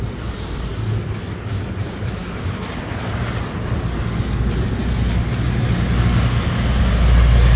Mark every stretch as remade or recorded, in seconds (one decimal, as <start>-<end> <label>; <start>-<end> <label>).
0.0-7.6 recorded